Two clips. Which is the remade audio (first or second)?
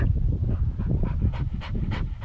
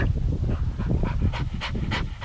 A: first